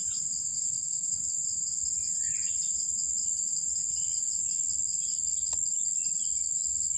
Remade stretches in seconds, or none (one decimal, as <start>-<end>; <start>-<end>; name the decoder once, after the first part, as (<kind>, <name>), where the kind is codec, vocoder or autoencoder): 0.5-1.2 (vocoder, WaveNeXt)